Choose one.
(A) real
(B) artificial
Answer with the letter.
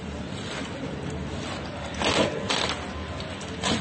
A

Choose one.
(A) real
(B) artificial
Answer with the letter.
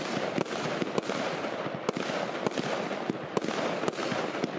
A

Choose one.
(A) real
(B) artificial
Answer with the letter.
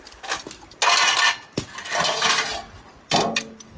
A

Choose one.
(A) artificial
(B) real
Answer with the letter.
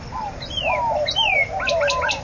B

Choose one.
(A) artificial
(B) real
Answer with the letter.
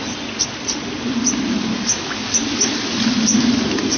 B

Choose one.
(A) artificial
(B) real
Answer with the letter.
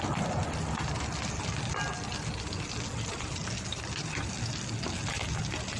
B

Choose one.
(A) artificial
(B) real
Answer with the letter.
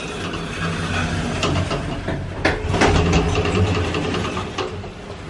B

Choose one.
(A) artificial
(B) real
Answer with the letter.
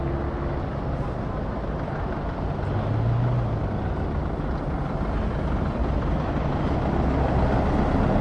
B